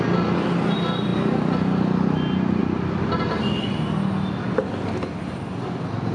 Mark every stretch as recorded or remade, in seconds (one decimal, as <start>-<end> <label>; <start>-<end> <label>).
0.0-6.1 recorded